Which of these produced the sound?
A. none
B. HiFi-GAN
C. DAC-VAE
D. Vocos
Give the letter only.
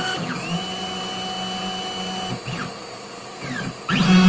A